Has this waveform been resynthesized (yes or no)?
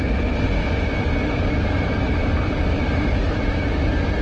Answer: no